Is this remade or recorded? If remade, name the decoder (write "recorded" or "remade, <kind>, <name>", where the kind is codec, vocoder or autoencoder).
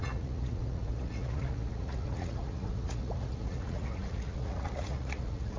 remade, vocoder, Vocos